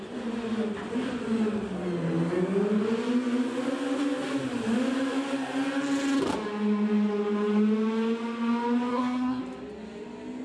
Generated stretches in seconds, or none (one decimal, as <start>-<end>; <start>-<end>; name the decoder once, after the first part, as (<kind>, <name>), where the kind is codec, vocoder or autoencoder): 8.9-9.4 (codec, SNAC)